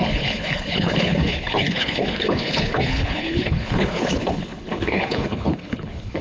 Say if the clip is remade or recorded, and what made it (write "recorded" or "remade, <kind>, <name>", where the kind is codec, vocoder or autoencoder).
remade, codec, HILCodec